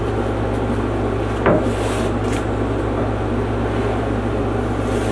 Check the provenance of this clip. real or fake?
real